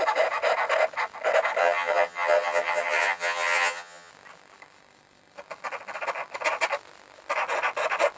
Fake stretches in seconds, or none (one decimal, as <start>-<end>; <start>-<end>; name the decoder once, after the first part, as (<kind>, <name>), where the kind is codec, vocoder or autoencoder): 1.6-4.1 (vocoder, HiFi-GAN)